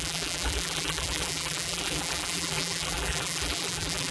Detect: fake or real fake